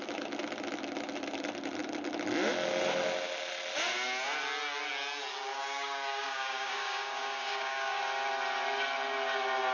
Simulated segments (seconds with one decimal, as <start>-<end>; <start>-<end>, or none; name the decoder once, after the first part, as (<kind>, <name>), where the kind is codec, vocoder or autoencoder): 5.5-8.0 (codec, DAC)